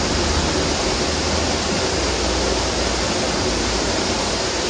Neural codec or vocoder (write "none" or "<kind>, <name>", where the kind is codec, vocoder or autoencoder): none